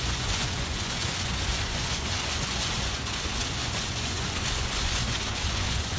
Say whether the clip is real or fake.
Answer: fake